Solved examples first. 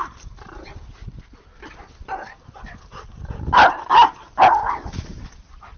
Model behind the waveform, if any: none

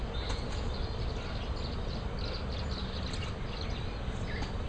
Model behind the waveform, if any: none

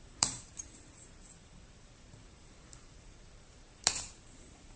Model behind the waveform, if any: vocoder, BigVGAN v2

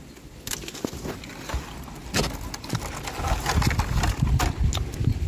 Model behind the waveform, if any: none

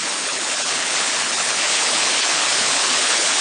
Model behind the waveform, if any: codec, HILCodec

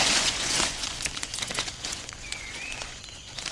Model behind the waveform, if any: vocoder, Vocos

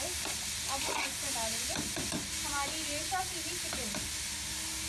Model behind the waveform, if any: none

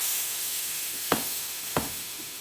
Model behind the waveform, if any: autoencoder, DAC-VAE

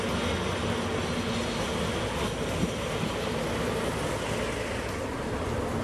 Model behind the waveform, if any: none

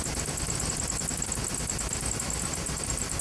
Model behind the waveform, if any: none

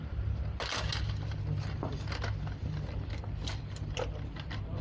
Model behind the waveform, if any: none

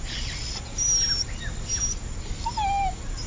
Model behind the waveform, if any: none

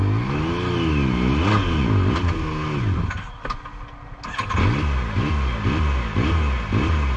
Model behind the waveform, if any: none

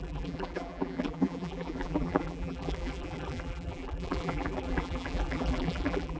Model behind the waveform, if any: vocoder, BigVGAN v2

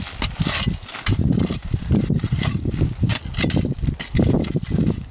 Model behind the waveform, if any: none